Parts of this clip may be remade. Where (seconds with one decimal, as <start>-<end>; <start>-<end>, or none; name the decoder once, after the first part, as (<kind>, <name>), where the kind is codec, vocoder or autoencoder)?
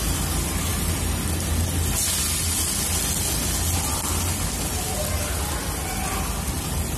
none